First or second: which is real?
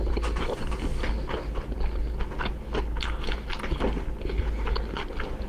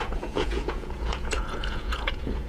first